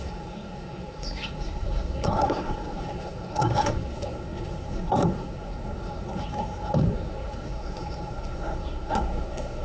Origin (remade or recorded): remade